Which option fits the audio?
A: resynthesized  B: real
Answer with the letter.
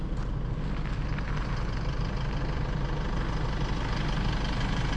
B